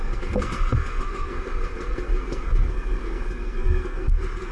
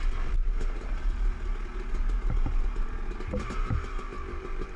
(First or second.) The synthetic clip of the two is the first